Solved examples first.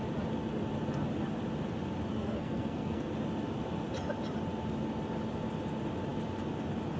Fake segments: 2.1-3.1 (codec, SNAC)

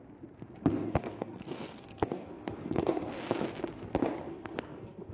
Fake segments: 0.7-3.1 (codec, SNAC); 4.3-5.1

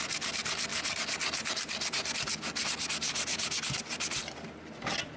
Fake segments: 4.2-5.2 (vocoder, BigVGAN v2)

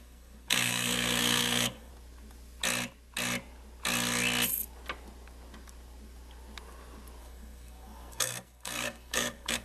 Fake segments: 0.0-1.9 (codec, SNAC); 7.2-9.6